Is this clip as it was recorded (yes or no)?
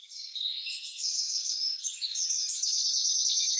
no